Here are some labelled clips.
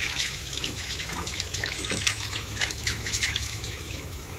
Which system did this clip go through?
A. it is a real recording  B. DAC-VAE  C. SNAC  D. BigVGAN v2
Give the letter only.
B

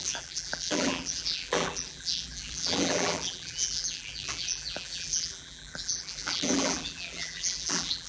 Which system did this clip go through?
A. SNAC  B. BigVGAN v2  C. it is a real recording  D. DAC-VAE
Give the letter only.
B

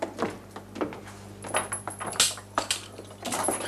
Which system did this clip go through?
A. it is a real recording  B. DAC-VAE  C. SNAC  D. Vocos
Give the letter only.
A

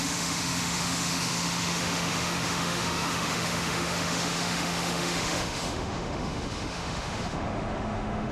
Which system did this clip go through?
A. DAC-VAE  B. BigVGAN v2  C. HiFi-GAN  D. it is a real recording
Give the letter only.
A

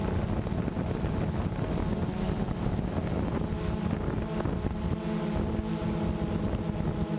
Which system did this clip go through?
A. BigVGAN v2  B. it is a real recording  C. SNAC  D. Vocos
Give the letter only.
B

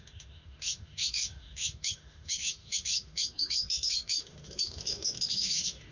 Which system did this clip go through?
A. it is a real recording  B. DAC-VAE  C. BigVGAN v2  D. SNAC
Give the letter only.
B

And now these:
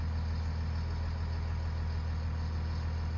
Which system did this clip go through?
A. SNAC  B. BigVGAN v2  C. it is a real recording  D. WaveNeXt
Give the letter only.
C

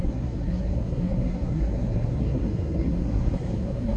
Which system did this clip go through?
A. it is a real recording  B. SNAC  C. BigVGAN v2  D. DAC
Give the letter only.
B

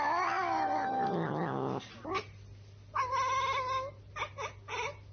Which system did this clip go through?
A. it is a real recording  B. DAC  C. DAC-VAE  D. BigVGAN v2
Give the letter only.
A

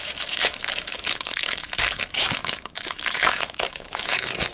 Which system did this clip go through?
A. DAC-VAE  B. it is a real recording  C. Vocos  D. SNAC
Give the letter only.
A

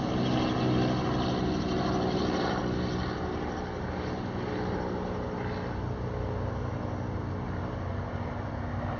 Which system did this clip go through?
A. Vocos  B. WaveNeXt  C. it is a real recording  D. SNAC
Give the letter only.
C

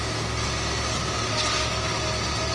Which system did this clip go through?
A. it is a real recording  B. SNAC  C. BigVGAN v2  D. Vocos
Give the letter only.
A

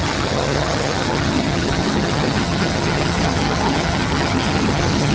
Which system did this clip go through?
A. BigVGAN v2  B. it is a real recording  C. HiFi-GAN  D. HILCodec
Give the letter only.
C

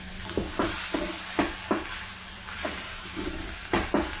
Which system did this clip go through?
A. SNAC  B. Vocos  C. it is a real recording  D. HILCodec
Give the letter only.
C